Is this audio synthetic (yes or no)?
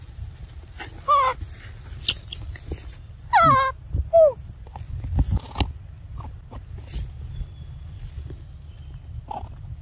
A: no